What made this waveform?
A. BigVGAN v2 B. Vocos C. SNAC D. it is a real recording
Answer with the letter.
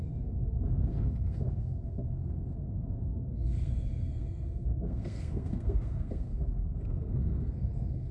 C